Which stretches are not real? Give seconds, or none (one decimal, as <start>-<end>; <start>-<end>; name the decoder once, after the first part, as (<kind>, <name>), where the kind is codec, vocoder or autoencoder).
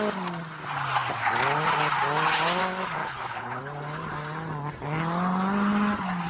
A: 3.0-3.6 (codec, HILCodec)